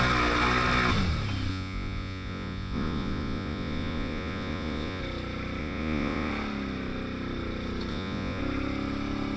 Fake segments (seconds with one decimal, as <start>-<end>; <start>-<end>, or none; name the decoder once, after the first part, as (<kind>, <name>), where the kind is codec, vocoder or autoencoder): 1.5-5.0 (vocoder, Vocos); 5.6-6.3; 7.9-8.4